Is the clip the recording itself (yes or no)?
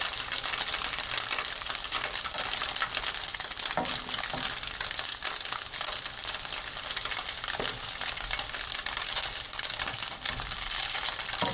yes